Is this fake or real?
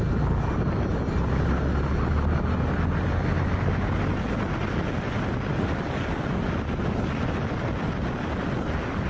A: real